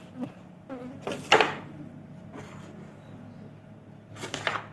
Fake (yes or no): no